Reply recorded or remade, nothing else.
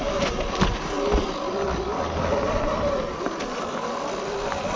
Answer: recorded